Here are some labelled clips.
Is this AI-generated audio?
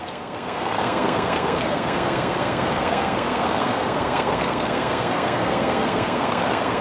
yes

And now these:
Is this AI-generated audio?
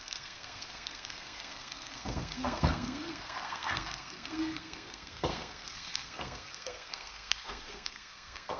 yes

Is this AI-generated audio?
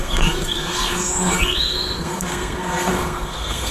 yes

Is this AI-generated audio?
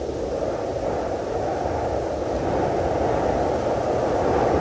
no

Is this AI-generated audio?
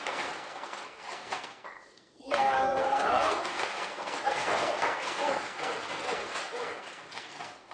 yes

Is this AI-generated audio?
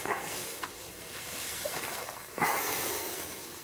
yes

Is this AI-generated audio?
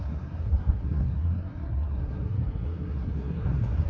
yes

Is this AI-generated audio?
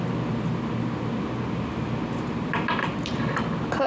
no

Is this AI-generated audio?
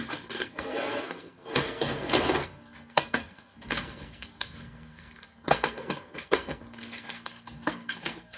yes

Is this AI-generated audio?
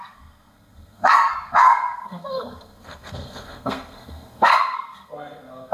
yes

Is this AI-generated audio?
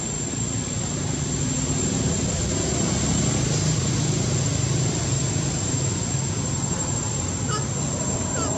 no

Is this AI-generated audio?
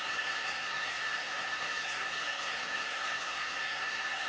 yes